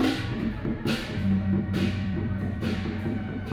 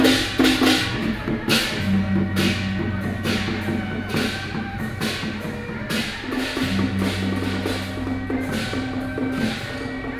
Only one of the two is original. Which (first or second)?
second